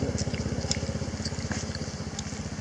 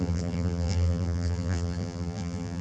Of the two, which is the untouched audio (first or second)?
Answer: first